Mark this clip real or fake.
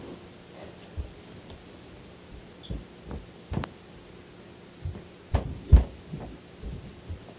real